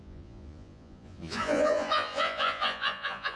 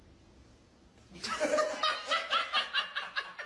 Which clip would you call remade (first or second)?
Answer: first